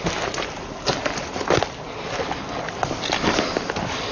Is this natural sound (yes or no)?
yes